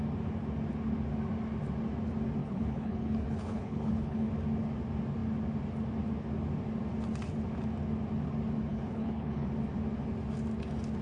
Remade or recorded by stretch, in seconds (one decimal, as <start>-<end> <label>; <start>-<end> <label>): 0.0-2.4 recorded; 2.4-4.3 remade; 4.3-8.7 recorded; 8.7-9.5 remade; 9.5-11.0 recorded